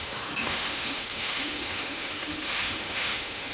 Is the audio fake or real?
fake